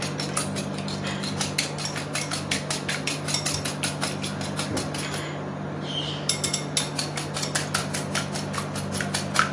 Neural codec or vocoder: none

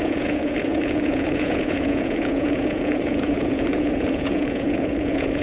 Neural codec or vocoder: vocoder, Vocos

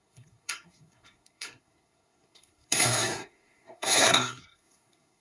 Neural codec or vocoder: codec, SNAC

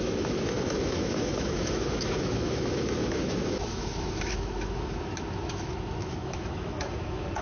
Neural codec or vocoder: autoencoder, DAC-VAE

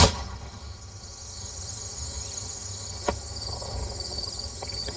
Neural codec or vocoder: vocoder, HiFi-GAN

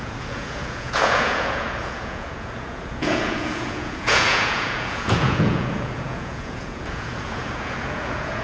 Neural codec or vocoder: vocoder, Vocos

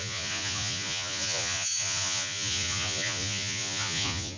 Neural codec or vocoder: vocoder, Vocos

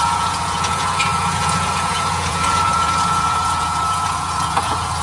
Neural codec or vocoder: vocoder, Vocos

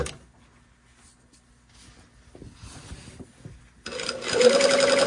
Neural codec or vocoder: none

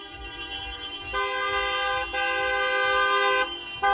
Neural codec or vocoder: none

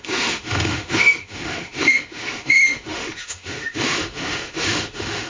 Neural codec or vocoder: autoencoder, DAC-VAE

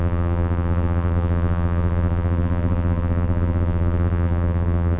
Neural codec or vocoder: vocoder, BigVGAN v2